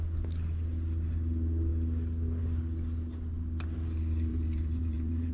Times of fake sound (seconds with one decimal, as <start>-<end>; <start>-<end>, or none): 4.3-5.3